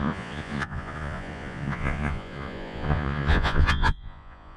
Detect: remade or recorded remade